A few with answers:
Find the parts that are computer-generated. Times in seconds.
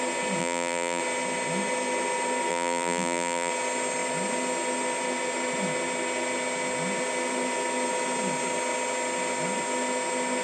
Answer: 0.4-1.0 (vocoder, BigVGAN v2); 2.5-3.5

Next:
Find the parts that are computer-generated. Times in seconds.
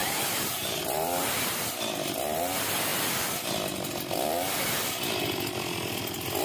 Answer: 0.0-0.8 (vocoder, BigVGAN v2)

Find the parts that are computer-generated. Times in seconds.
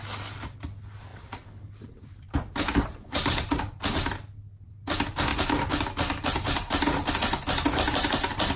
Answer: 1.1-3.6 (vocoder, BigVGAN v2)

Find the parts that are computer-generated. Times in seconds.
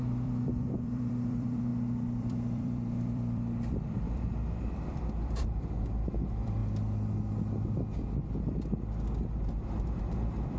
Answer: 0.0-1.7 (vocoder, BigVGAN v2); 2.2-6.6; 10.0-10.6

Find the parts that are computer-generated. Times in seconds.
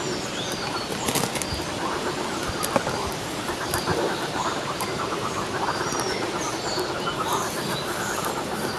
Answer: 3.9-5.8 (vocoder, BigVGAN v2)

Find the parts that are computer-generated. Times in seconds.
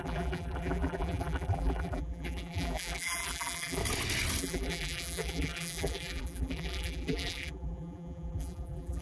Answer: 0.0-3.8 (vocoder, BigVGAN v2); 4.4-9.0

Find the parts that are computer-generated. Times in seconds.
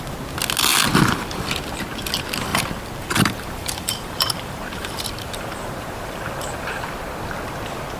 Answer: 2.5-6.9 (vocoder, BigVGAN v2)